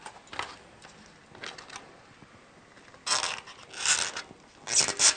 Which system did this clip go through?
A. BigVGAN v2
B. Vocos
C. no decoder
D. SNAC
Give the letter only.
C